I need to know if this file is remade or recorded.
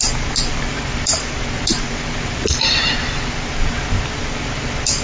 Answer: recorded